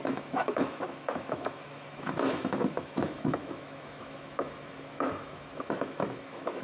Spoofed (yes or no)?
yes